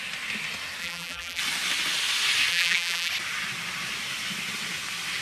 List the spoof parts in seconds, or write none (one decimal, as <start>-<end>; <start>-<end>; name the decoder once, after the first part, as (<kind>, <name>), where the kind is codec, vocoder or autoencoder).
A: 0.8-1.4 (vocoder, BigVGAN v2); 2.5-3.1